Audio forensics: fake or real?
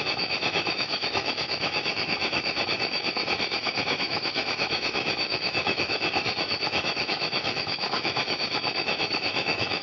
fake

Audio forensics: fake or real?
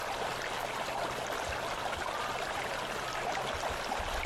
real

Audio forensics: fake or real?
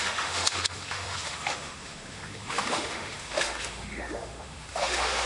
fake